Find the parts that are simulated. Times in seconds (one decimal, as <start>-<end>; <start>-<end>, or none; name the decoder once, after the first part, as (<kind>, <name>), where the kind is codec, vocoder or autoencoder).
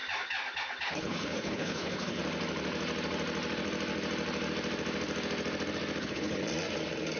0.9-2.2 (codec, HILCodec); 6.0-6.4